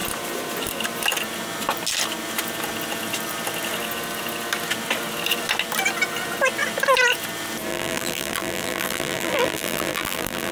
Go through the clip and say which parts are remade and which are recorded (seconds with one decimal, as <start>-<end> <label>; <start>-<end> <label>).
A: 0.0-7.7 recorded; 7.7-10.5 remade